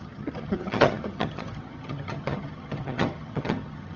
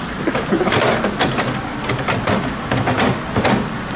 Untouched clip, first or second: second